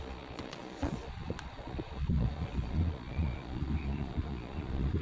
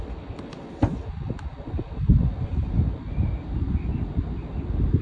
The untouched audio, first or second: second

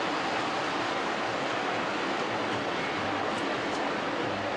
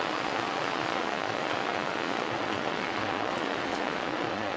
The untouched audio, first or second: first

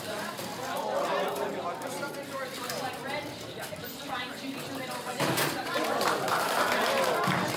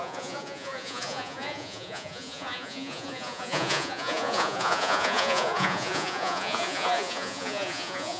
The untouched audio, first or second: first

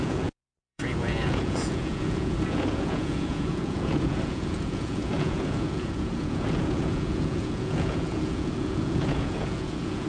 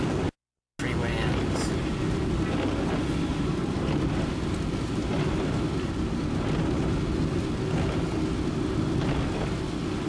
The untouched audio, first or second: second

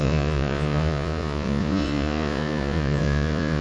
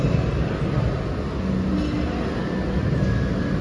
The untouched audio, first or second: second